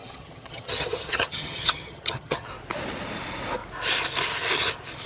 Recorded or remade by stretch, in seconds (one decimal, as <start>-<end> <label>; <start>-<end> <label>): 0.0-2.5 remade; 2.5-5.1 recorded